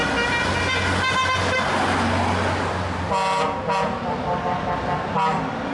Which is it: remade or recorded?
recorded